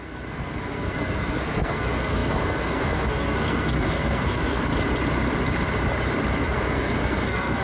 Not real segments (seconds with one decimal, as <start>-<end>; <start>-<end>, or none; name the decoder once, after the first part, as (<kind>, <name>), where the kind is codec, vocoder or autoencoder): 0.0-4.7 (codec, SNAC); 6.4-7.6